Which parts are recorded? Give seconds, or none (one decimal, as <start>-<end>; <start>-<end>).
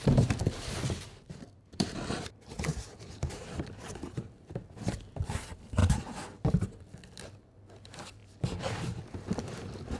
2.7-3.4; 5.8-6.6; 8.2-9.4